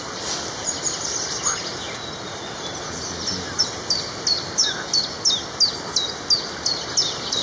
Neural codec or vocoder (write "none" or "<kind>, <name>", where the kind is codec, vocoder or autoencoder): none